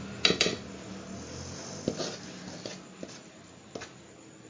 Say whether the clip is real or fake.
real